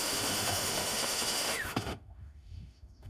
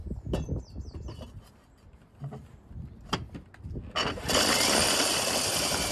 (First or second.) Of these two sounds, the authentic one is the second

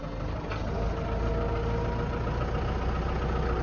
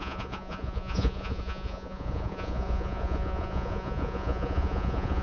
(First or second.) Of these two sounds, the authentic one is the first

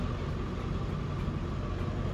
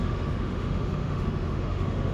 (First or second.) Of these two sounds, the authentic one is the first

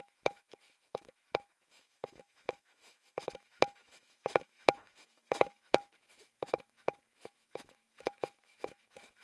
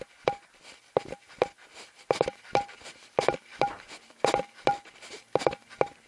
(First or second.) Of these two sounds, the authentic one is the second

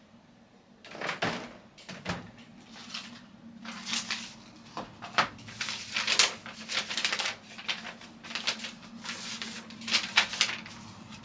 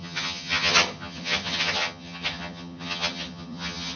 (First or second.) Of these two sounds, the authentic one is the first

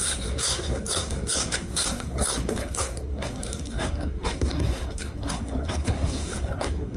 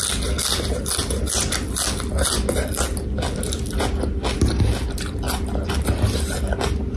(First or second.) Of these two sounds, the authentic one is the second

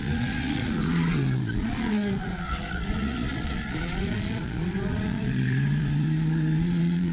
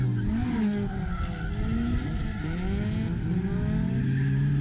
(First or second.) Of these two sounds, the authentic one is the second